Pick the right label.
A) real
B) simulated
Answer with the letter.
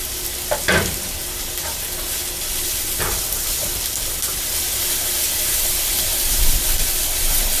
B